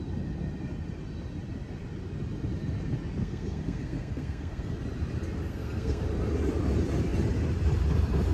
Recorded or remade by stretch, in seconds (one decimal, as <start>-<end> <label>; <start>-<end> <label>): 0.0-3.2 recorded; 3.2-4.7 remade; 4.7-5.5 recorded; 5.5-6.0 remade; 6.0-8.3 recorded